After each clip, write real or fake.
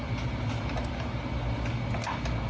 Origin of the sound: real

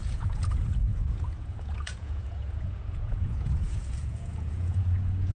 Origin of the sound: fake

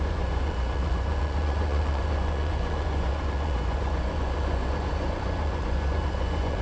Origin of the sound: fake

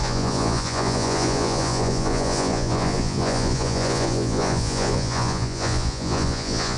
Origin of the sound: fake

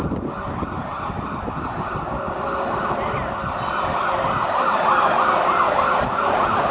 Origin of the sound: real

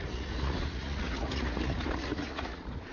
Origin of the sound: fake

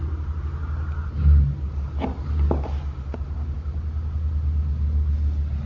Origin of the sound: real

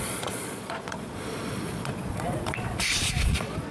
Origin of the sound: fake